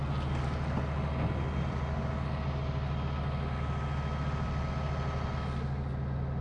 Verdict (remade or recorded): recorded